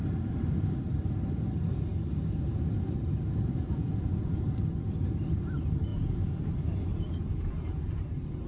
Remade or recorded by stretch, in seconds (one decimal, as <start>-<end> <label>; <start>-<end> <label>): 0.0-3.6 recorded; 3.6-4.4 remade; 4.4-5.9 recorded; 5.9-6.5 remade; 6.5-6.9 recorded; 6.9-8.0 remade; 8.0-8.5 recorded